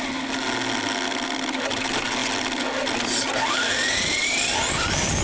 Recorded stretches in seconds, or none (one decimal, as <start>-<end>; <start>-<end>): 0.0-5.2